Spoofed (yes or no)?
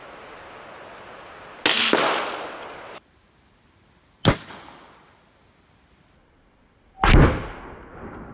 no